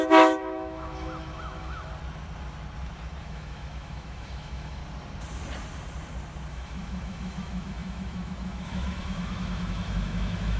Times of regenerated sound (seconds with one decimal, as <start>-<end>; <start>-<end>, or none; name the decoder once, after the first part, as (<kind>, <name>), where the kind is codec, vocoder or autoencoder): 0.0-1.9 (autoencoder, DAC-VAE); 3.2-4.8; 6.5-10.6